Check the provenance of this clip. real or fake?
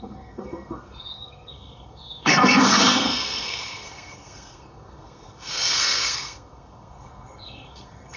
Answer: fake